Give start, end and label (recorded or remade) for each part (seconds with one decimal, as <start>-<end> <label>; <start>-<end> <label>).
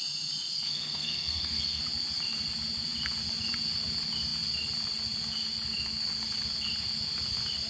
0.0-0.5 recorded; 0.5-1.8 remade; 1.8-7.7 recorded